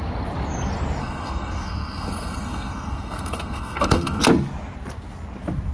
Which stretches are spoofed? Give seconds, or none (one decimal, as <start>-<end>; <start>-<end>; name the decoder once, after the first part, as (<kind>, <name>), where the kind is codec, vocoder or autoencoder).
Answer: 1.0-4.2 (codec, SNAC)